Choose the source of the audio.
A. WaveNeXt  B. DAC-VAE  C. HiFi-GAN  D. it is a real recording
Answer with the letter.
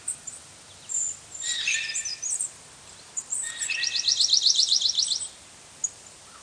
D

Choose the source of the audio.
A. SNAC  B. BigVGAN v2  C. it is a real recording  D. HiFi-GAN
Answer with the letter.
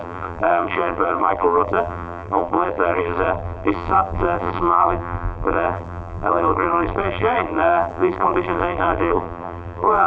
B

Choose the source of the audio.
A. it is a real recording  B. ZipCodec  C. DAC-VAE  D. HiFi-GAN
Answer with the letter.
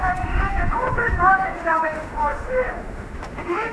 C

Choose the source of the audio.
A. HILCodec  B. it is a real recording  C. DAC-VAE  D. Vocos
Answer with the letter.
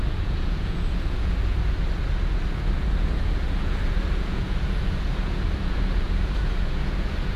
D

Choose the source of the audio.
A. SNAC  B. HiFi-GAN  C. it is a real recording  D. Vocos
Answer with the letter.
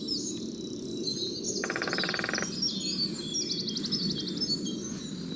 C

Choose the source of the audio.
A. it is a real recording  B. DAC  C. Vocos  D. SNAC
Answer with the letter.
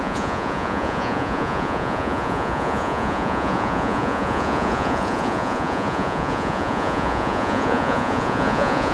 C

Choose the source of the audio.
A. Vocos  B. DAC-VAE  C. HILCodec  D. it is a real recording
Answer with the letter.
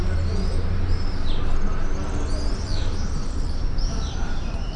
D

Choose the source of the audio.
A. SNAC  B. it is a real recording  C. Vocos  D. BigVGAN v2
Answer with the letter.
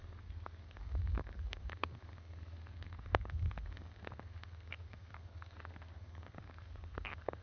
A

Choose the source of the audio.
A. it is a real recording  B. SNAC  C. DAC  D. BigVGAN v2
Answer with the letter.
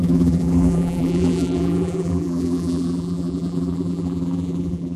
D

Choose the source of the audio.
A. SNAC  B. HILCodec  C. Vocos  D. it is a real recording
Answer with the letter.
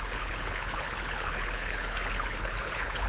B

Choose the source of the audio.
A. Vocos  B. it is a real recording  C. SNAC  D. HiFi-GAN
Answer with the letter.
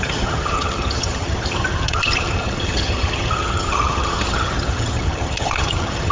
D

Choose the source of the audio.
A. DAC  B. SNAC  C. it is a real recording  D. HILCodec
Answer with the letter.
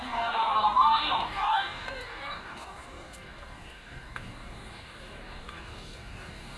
A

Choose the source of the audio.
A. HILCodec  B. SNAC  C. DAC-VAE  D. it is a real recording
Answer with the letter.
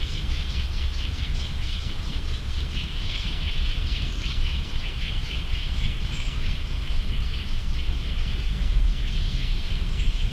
B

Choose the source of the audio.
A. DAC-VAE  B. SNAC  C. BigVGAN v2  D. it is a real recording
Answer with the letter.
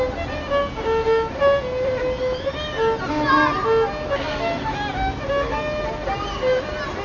D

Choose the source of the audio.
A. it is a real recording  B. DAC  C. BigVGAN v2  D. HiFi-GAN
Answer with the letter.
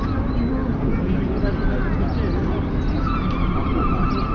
A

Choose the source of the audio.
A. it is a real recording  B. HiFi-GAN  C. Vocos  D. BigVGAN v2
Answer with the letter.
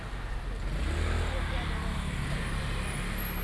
A